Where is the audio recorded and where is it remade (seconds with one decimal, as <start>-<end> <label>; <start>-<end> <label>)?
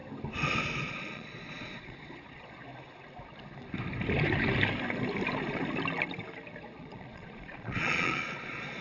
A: 0.0-0.8 recorded; 0.8-2.7 remade; 2.7-6.6 recorded; 6.6-8.8 remade